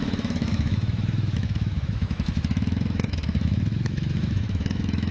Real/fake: fake